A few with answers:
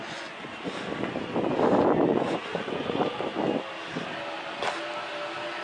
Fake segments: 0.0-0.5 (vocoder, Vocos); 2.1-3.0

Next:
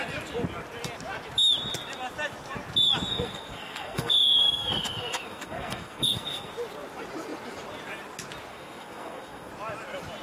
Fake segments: 3.1-6.5 (codec, SNAC); 8.5-9.5

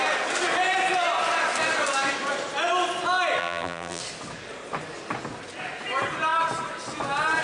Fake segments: 3.4-4.0 (vocoder, BigVGAN v2)